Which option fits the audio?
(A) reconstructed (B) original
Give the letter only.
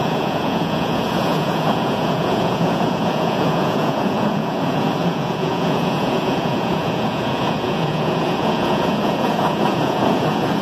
A